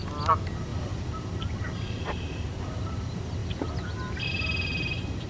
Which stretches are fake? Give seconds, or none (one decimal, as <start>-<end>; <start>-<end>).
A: none